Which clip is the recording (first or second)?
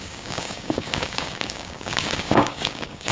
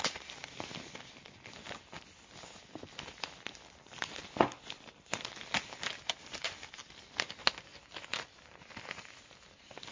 second